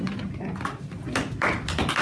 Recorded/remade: recorded